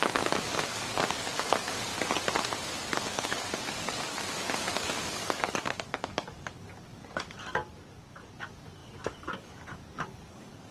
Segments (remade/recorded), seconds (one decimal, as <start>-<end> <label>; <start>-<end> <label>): 0.0-1.9 remade; 1.9-2.8 recorded; 2.8-10.7 remade